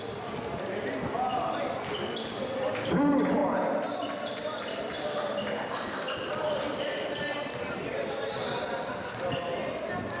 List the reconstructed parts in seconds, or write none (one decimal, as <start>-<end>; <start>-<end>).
none